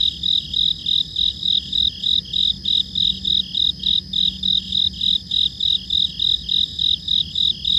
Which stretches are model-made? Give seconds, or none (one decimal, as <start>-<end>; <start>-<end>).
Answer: none